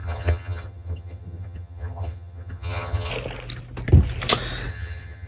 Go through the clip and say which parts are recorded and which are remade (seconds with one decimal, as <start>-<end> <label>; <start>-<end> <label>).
0.0-3.1 remade; 3.1-4.7 recorded; 4.7-5.3 remade